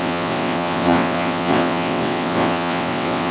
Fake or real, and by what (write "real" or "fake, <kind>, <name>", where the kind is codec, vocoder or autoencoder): fake, vocoder, WaveNeXt